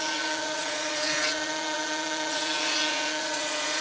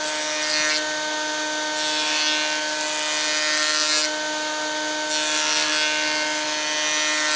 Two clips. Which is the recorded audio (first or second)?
second